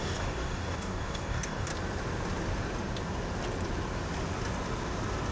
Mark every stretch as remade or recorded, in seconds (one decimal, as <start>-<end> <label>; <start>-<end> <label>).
0.0-1.7 remade; 1.7-5.3 recorded